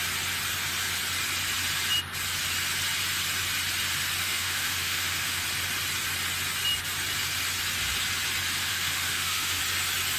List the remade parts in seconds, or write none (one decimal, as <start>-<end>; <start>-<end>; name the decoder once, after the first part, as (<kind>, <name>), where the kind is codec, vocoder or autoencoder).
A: 4.2-5.4 (autoencoder, DAC-VAE); 8.7-9.6